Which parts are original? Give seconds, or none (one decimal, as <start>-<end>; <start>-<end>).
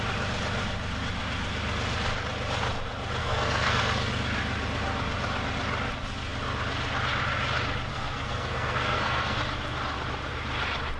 0.0-3.2; 3.8-7.9; 9.4-11.0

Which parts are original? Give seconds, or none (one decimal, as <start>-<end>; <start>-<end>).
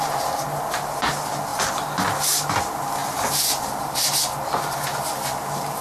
0.0-5.8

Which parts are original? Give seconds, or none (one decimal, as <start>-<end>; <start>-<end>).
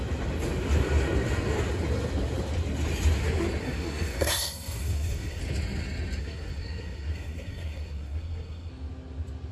0.0-3.6; 5.4-6.2; 8.7-9.5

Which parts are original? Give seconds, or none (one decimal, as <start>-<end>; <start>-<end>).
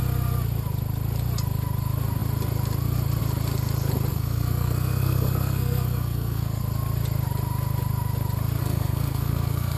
0.0-4.1; 6.6-8.6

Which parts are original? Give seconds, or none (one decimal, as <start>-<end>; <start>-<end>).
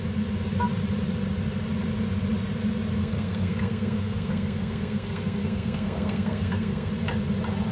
0.0-3.0; 6.9-7.7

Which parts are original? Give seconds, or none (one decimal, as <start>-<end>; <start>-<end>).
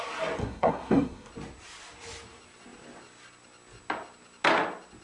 0.0-0.4; 1.3-5.0